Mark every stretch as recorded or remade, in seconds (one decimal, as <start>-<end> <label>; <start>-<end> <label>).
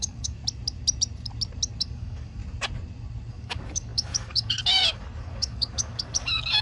0.0-0.4 remade; 0.4-1.8 recorded; 1.8-2.4 remade; 2.4-3.3 recorded; 3.3-6.6 remade